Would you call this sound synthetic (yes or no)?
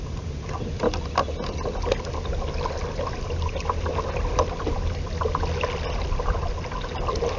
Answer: no